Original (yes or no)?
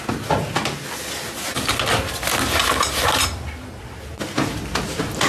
yes